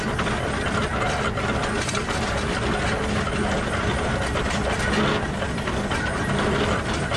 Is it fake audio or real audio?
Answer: real